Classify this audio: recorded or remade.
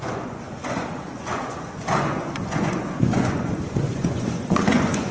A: remade